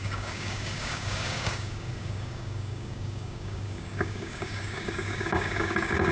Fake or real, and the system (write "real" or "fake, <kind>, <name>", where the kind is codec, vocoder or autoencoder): fake, codec, DAC